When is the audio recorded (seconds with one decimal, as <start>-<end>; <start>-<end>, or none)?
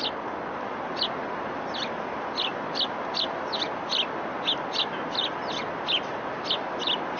0.0-7.2